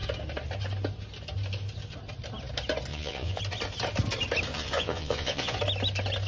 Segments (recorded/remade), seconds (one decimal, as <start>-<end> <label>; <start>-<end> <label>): 0.0-2.9 recorded; 2.9-3.4 remade; 3.4-4.5 recorded; 4.5-5.6 remade; 5.6-6.3 recorded